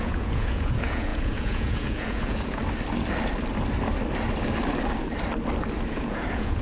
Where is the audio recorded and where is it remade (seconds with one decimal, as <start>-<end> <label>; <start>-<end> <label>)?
0.0-2.6 remade; 2.6-5.9 recorded; 5.9-6.6 remade